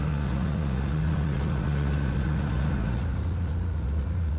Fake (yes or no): yes